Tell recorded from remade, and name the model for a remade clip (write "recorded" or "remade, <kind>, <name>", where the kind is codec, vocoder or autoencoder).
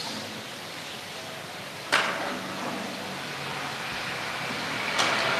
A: recorded